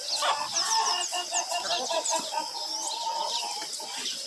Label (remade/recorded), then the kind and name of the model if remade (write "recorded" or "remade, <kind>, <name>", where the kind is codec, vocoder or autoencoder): recorded